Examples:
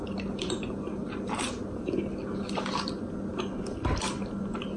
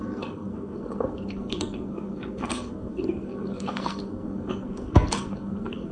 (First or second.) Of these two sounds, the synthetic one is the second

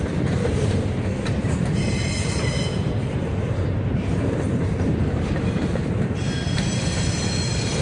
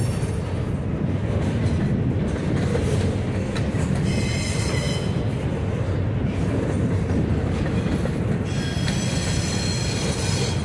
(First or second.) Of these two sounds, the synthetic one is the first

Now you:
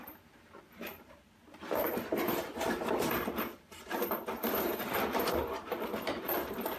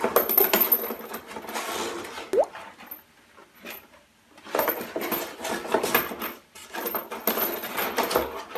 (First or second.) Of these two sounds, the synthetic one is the first